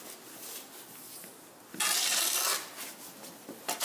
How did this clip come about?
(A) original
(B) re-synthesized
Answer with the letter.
A